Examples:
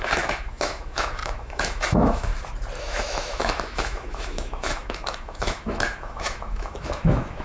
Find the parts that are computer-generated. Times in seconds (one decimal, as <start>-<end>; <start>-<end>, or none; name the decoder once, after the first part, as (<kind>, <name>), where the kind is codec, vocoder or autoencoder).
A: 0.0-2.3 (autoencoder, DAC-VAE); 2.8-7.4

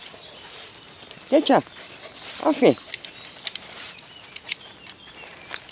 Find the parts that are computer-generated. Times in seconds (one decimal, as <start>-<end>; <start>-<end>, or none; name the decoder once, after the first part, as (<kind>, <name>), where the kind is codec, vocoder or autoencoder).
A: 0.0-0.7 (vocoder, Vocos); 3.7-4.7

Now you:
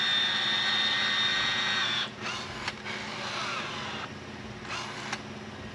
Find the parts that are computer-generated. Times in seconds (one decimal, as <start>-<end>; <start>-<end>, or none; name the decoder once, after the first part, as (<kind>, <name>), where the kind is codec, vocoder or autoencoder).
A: 1.3-2.2 (vocoder, Vocos)